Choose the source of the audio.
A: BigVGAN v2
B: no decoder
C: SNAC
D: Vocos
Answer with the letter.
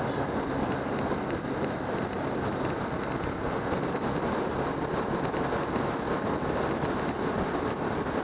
B